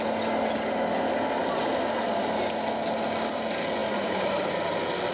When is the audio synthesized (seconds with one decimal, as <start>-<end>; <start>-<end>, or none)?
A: 3.8-4.5